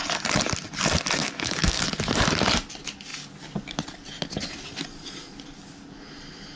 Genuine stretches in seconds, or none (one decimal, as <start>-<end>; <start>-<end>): 0.0-1.2; 1.8-6.6